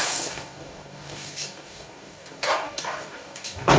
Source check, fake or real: fake